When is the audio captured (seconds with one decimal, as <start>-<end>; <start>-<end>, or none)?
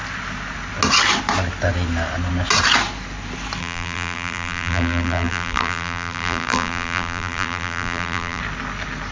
0.0-3.6; 8.4-9.1